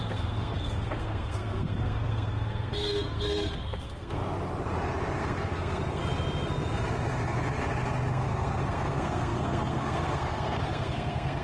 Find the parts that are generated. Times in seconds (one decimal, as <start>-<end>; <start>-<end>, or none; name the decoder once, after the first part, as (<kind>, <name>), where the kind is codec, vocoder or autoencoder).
0.0-4.2 (codec, SNAC); 5.2-6.0; 8.1-11.4